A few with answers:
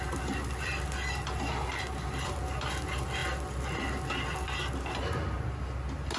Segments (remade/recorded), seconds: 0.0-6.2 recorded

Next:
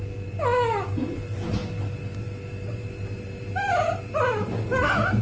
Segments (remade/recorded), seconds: 0.0-5.2 recorded

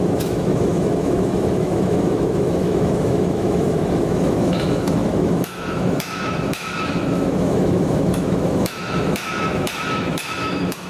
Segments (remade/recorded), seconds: 0.0-10.9 remade

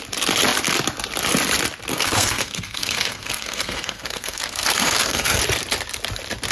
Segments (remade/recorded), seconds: 0.0-1.9 recorded; 1.9-5.4 remade; 5.4-6.5 recorded

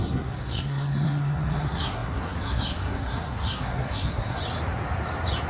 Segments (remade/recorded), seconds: 0.0-4.4 remade; 4.4-5.5 recorded

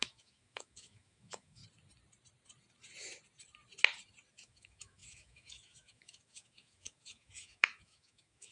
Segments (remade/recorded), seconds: 0.0-1.6 remade; 1.6-4.3 recorded; 4.3-8.5 remade

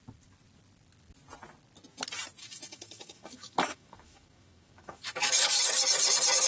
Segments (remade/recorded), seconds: 0.0-2.4 recorded; 2.4-5.6 remade; 5.6-6.5 recorded